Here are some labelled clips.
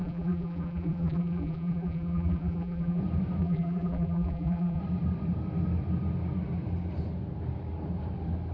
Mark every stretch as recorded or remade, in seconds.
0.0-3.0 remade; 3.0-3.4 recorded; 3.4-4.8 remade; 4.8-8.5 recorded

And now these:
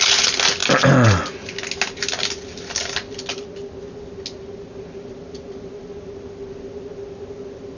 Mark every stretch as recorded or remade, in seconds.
0.0-7.8 recorded

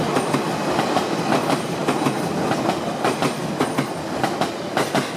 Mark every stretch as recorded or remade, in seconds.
0.0-5.2 recorded

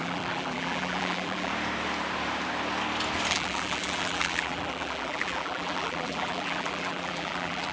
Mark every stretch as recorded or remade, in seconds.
0.0-1.5 remade; 1.5-3.3 recorded; 3.3-7.7 remade

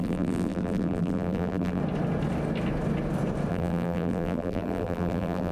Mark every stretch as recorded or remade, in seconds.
0.0-1.8 remade; 1.8-3.5 recorded; 3.5-5.5 remade

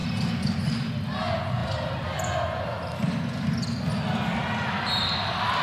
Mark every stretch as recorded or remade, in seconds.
0.0-0.9 remade; 0.9-5.6 recorded

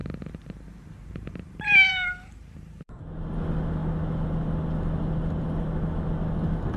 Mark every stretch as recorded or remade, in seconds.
0.0-3.0 remade; 3.0-6.8 recorded

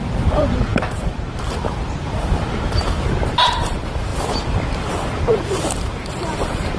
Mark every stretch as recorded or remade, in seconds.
0.0-4.1 remade; 4.1-5.3 recorded; 5.3-6.8 remade